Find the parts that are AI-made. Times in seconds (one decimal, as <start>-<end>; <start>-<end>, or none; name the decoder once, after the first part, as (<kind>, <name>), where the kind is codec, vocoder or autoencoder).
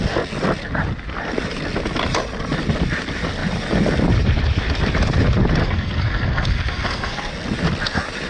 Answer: 5.6-7.3 (codec, SNAC)